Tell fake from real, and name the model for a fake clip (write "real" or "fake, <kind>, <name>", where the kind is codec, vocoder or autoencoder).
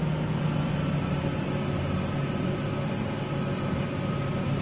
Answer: real